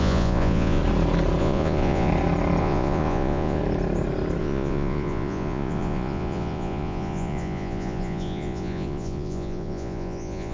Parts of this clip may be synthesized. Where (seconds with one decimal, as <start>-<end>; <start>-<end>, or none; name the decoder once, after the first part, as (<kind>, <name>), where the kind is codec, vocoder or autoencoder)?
0.0-0.8 (vocoder, Vocos); 1.4-2.1; 2.6-3.6; 4.4-10.5